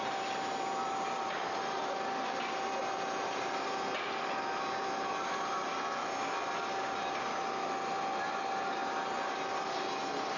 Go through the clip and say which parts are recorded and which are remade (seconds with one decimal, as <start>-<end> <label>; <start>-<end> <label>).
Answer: 0.0-10.4 recorded